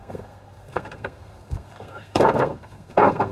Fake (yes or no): yes